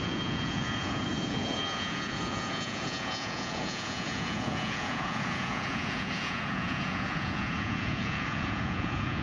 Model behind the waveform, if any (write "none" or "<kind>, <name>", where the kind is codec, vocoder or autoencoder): vocoder, Vocos